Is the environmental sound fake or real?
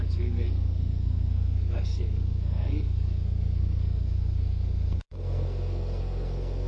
fake